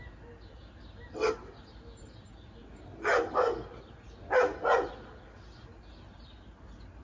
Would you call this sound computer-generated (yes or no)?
no